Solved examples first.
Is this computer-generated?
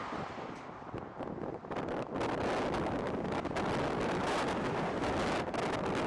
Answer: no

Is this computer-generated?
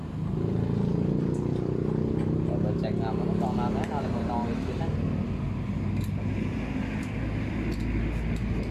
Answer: no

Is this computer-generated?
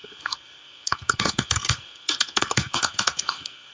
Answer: yes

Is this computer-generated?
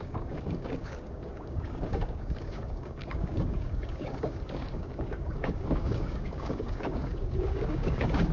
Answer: yes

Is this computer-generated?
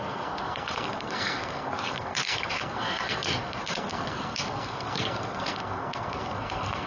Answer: yes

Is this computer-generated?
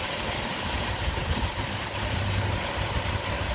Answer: yes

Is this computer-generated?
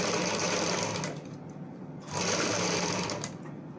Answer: no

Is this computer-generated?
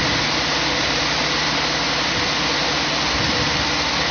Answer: no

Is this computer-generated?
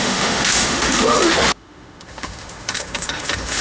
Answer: yes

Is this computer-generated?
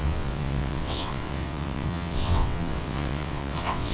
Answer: yes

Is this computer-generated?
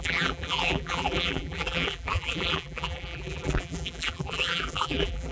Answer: yes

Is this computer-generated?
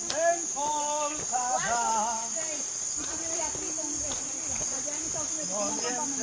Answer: no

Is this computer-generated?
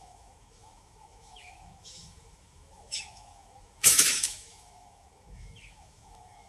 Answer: yes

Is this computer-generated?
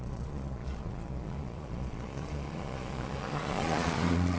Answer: yes